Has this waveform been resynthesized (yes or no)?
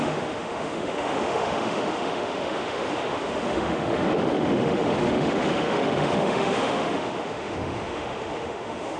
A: yes